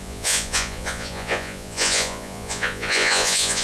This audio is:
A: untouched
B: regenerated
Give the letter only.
B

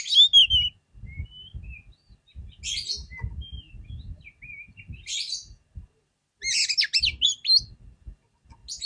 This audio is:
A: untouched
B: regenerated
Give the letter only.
A